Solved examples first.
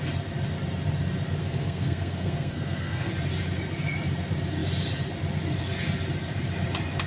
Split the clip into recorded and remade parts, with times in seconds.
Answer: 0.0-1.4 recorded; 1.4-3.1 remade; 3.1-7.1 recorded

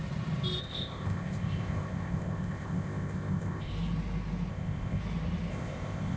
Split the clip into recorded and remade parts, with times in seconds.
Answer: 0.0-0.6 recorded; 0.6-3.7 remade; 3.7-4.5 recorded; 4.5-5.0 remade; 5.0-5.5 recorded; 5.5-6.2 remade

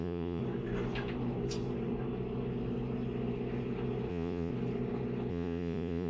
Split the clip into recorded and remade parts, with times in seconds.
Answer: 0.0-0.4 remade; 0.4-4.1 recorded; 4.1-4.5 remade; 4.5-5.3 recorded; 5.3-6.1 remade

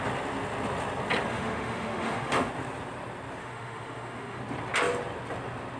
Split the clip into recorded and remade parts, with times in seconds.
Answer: 0.0-1.3 recorded; 1.3-2.5 remade; 2.5-3.4 recorded; 3.4-4.4 remade; 4.4-5.8 recorded

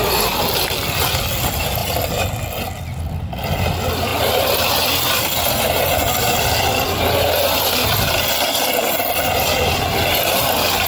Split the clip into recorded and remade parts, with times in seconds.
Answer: 0.0-10.9 recorded

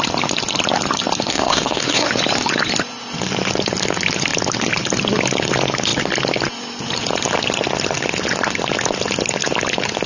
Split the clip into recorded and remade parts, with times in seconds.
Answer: 0.0-1.3 recorded; 1.3-2.1 remade; 2.1-10.1 recorded

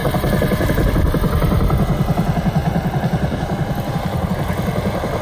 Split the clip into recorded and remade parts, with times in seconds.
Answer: 0.0-0.7 remade; 0.7-2.6 recorded; 2.6-4.3 remade; 4.3-5.2 recorded

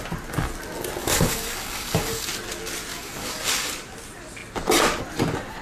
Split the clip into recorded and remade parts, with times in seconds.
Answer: 0.0-1.0 recorded; 1.0-2.3 remade; 2.3-2.9 recorded; 2.9-3.7 remade; 3.7-5.6 recorded